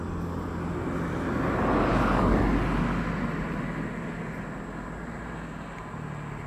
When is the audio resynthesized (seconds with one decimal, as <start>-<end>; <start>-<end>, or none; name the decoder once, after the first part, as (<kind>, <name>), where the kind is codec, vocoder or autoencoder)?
1.9-2.4 (codec, DAC)